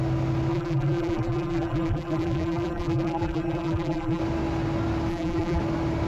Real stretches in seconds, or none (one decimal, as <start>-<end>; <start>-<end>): 0.0-0.5; 4.2-5.1; 5.6-6.1